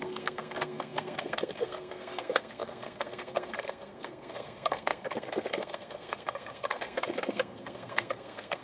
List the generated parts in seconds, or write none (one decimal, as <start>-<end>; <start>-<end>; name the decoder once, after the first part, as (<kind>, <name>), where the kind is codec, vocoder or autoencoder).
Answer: 0.0-8.6 (codec, SNAC)